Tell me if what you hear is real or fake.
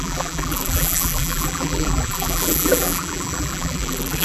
fake